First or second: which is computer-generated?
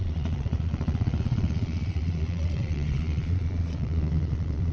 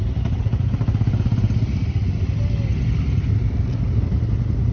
first